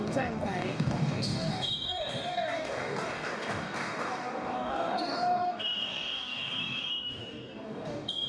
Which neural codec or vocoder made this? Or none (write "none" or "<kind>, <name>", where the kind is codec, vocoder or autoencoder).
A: codec, DAC